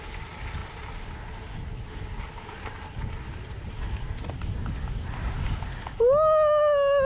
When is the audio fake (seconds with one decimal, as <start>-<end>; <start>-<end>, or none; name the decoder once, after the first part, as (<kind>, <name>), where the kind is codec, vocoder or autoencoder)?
none